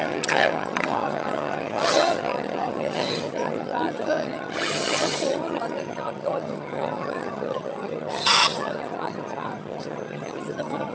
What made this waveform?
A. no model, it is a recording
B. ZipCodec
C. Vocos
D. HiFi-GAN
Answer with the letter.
D